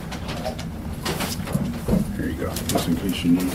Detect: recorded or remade remade